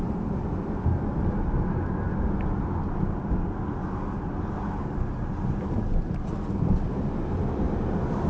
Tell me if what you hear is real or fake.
real